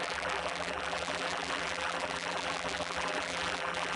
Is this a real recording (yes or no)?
no